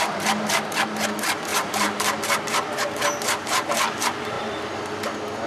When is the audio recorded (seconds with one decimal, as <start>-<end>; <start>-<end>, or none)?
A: 0.0-1.5; 2.1-5.5